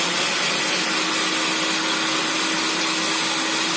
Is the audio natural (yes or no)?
yes